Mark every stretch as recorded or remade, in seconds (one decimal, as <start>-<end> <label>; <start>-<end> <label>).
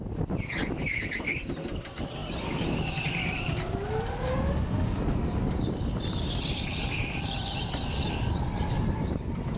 0.0-9.6 recorded